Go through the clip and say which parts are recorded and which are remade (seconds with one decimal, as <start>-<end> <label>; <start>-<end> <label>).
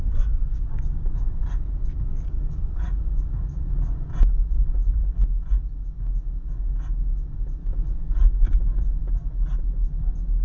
0.0-0.7 remade; 0.7-2.1 recorded; 2.1-3.0 remade; 3.0-7.6 recorded; 7.6-8.3 remade; 8.3-10.4 recorded